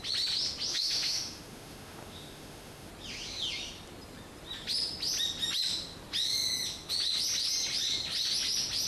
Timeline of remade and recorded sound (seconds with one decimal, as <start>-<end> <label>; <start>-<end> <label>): 0.0-0.7 recorded; 0.7-2.9 remade; 2.9-8.9 recorded